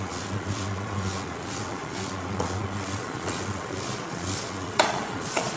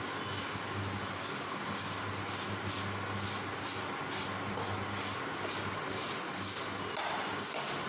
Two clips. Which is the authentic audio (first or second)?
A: second